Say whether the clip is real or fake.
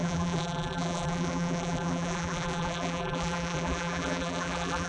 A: fake